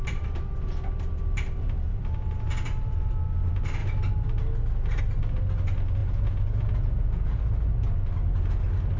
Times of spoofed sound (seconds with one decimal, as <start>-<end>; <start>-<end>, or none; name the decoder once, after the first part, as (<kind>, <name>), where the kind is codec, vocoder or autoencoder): 6.0-7.4 (vocoder, Vocos)